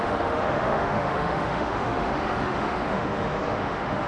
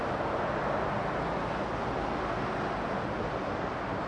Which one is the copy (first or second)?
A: first